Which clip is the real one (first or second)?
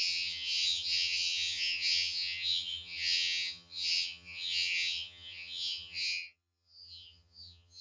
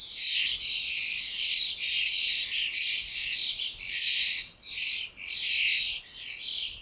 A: second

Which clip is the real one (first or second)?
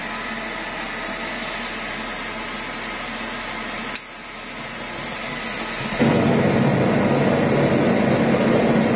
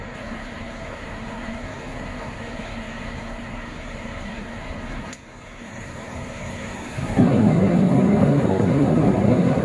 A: first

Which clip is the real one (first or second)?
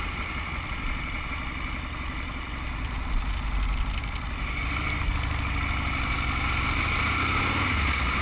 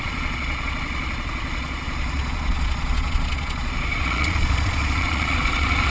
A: first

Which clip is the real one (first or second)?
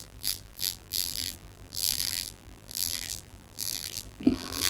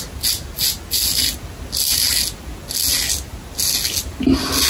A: second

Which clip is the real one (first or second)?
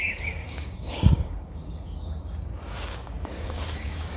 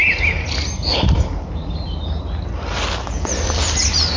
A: second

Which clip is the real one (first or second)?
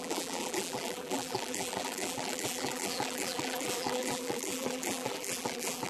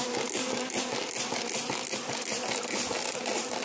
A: second